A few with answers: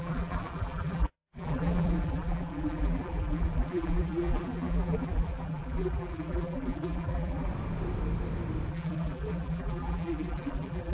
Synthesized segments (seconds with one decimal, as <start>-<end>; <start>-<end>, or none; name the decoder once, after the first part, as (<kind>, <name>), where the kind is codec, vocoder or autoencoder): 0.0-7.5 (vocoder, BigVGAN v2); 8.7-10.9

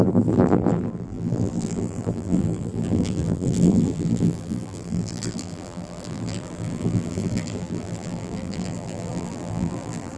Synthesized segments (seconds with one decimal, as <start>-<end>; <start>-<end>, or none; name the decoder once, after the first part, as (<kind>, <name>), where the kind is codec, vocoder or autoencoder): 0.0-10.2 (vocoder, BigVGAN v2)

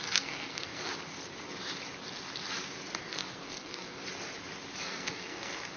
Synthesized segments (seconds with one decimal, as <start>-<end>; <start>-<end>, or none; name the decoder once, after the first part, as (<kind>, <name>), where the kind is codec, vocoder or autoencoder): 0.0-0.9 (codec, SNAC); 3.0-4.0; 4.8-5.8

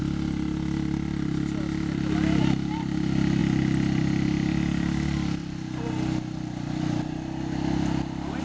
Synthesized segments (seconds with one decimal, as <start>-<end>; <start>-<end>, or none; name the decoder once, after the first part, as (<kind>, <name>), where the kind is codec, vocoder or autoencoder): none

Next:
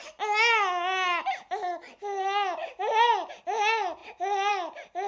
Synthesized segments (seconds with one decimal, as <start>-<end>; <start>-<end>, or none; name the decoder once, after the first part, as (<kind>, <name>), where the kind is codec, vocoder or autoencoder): none

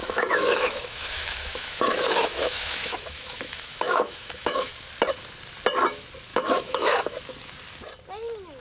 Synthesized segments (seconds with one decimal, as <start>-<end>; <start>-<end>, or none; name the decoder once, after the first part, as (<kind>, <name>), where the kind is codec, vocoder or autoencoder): 0.0-4.7 (autoencoder, DAC-VAE); 6.3-7.2